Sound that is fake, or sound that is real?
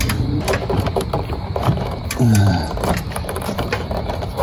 fake